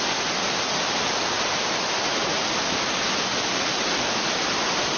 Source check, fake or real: real